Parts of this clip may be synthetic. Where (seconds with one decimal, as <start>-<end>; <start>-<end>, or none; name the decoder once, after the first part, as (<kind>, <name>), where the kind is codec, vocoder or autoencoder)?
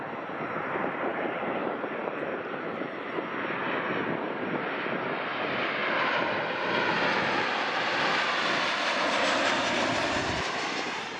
1.1-3.1 (vocoder, BigVGAN v2)